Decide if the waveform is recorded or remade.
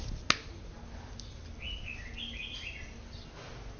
recorded